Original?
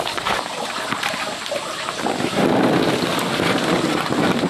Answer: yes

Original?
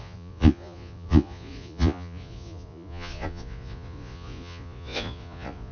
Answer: no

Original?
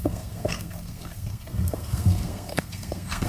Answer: no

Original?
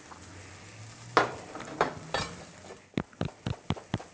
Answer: yes